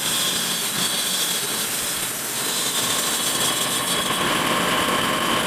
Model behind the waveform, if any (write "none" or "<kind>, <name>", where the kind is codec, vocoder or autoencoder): none